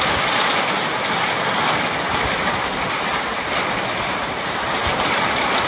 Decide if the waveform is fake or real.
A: real